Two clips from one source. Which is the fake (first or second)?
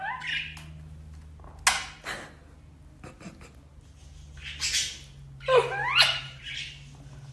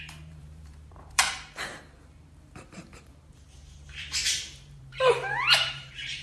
second